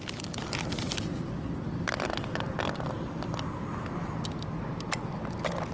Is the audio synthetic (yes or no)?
no